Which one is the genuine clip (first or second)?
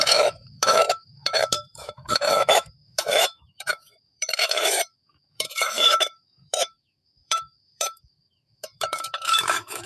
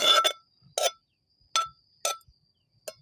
second